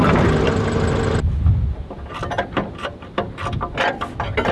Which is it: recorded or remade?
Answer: recorded